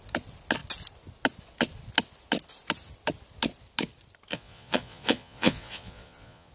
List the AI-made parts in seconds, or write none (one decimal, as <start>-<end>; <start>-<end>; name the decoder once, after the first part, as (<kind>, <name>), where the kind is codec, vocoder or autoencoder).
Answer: 4.3-6.5 (vocoder, Vocos)